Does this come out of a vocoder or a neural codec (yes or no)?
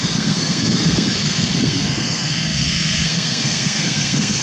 yes